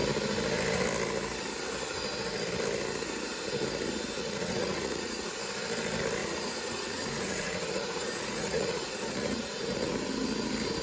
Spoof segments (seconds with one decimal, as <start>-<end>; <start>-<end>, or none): 4.2-5.3; 6.2-9.9